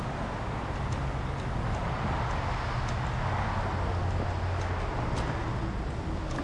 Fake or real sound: real